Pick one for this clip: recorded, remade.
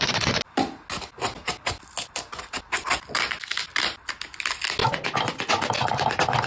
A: recorded